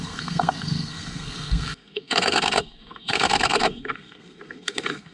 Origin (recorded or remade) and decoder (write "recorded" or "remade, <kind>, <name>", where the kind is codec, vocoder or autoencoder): remade, codec, SNAC